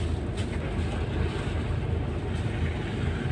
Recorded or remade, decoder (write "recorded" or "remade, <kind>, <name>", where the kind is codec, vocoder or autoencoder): recorded